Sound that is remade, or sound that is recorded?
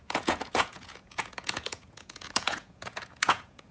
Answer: remade